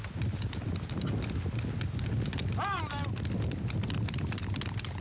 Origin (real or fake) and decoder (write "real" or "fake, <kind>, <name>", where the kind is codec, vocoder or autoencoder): real